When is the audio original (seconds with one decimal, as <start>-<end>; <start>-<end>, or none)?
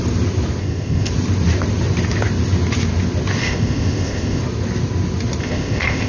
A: 0.0-0.6; 1.1-3.4; 4.4-5.4